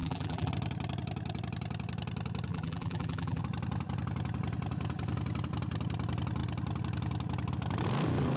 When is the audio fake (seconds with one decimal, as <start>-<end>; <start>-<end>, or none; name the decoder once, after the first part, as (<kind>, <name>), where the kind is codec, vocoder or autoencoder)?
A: 0.0-0.5 (vocoder, BigVGAN v2); 2.5-3.4